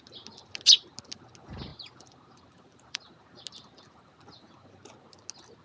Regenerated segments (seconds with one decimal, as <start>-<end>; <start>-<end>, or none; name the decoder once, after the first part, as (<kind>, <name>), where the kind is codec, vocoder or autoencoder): 1.7-3.1 (vocoder, BigVGAN v2)